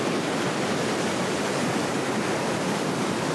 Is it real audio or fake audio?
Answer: fake